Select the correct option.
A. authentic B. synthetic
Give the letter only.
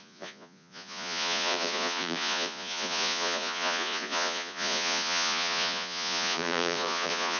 B